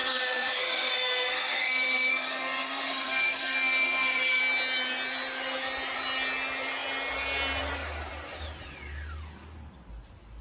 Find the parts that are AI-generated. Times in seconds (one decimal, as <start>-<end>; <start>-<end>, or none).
0.0-4.4

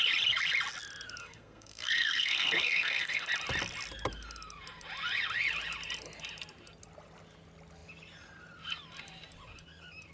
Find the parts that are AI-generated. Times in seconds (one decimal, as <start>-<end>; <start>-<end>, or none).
1.2-3.3

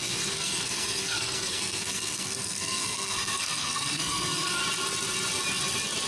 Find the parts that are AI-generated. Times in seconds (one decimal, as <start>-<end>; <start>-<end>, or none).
0.0-4.6

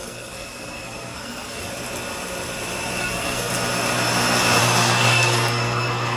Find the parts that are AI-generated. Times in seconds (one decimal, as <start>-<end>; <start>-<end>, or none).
0.0-1.6; 3.0-3.5; 4.6-6.2

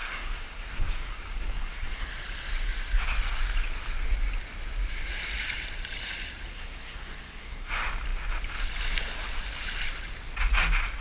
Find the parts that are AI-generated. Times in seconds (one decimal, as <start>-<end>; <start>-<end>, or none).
0.0-2.1; 6.5-7.7

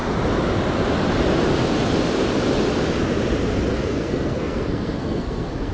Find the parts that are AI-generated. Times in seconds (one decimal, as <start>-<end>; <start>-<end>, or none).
3.7-5.7

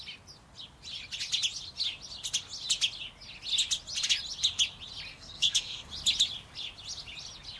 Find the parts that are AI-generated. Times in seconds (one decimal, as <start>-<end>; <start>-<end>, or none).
5.1-5.9

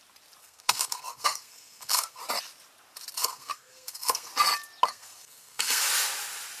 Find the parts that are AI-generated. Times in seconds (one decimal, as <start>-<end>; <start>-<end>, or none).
0.4-2.2; 3.2-4.3; 4.9-5.8